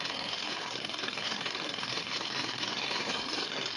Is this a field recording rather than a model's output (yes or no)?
no